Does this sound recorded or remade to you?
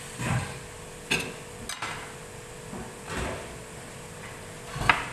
recorded